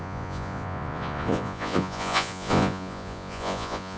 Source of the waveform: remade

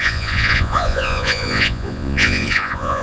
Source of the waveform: remade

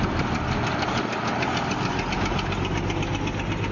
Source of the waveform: recorded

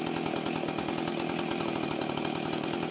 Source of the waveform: remade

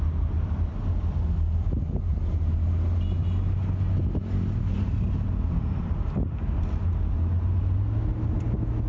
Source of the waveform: recorded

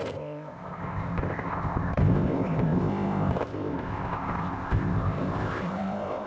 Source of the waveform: remade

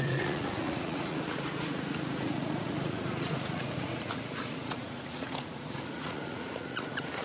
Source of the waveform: remade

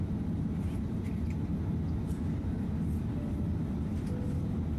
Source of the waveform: recorded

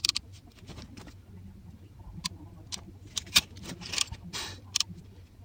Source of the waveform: remade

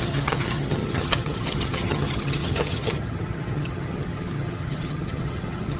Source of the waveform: remade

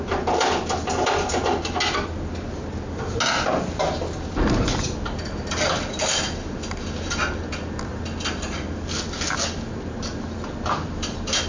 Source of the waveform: recorded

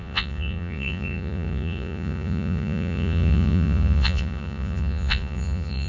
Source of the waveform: remade